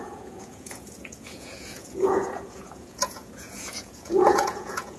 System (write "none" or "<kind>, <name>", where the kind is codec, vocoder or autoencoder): vocoder, Vocos